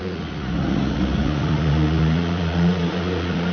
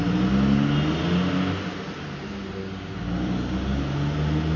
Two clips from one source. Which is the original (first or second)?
second